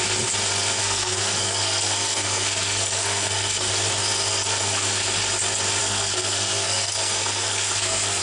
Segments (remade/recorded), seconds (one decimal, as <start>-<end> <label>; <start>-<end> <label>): 0.0-0.8 recorded; 0.8-3.7 remade; 3.7-4.3 recorded; 4.3-5.0 remade; 5.0-5.8 recorded; 5.8-8.2 remade